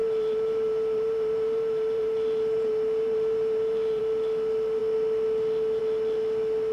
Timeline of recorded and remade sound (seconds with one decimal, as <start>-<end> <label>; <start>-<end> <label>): 0.0-4.0 remade; 4.0-6.7 recorded